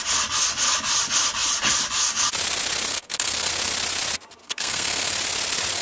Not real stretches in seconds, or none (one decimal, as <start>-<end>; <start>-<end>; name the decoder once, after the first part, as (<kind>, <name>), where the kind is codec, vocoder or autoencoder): 2.9-3.5 (codec, SNAC); 4.4-5.1